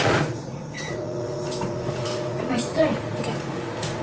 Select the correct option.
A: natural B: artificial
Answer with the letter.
B